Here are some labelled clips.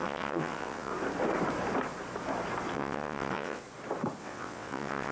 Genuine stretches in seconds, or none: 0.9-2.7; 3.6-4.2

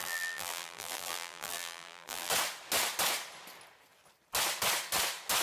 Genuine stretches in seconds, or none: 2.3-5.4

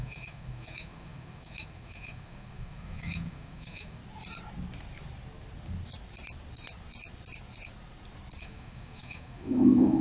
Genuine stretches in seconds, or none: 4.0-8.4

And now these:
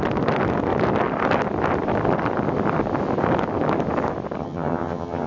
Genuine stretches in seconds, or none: 0.0-4.4

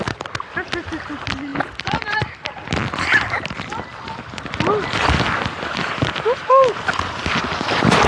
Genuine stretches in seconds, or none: 0.0-8.1

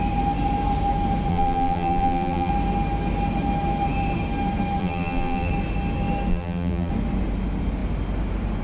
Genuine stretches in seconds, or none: 0.0-1.3; 2.5-4.8; 5.5-6.3; 6.9-8.6